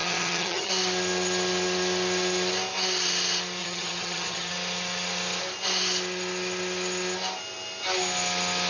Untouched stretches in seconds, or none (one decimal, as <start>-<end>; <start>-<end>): 0.7-3.6; 4.5-8.7